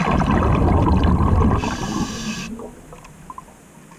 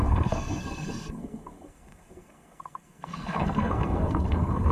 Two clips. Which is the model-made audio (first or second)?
second